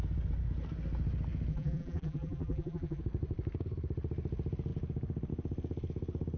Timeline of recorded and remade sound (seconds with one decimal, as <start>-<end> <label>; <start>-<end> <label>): 0.0-1.5 recorded; 1.5-3.0 remade; 3.0-6.4 recorded